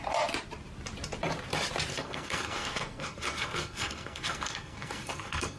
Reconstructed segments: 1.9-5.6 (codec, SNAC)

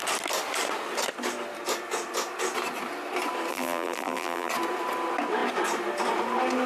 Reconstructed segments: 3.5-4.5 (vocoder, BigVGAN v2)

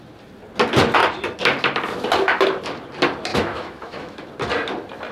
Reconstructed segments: 3.3-4.3 (autoencoder, DAC-VAE)

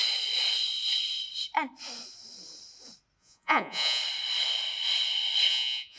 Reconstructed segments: 3.2-4.0 (vocoder, Vocos); 5.5-6.0

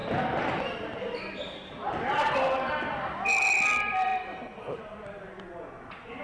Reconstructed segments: 4.1-5.1 (vocoder, BigVGAN v2)

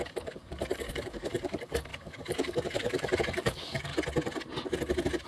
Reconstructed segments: 0.0-3.9 (codec, DAC)